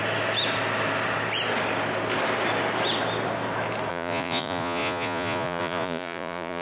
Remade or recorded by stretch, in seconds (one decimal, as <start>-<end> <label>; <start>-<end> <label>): 0.0-3.9 recorded; 3.9-6.6 remade